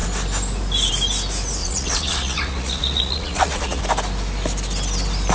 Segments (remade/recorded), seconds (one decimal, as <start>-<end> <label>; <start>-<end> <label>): 0.0-1.6 recorded; 1.6-3.8 remade; 3.8-5.3 recorded